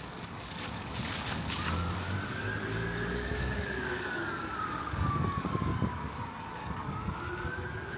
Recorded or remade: remade